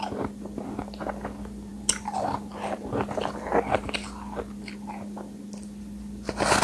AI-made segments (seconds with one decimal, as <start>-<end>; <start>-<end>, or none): none